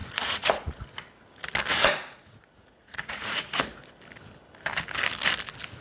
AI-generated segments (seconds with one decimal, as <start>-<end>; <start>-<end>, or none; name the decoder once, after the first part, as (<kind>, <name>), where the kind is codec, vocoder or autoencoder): 0.0-0.8 (vocoder, Vocos); 1.7-3.6